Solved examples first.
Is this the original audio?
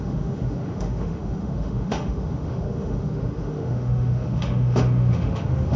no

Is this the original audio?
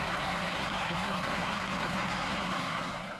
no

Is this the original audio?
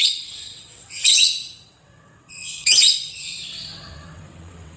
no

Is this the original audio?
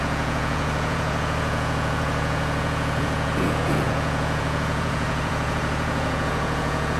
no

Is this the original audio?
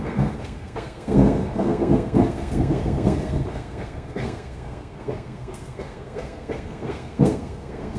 no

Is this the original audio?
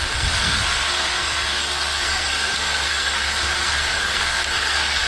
no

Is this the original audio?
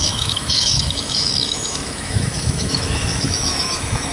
no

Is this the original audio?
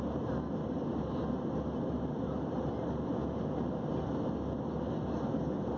yes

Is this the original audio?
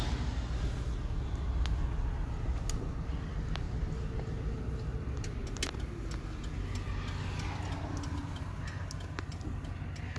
yes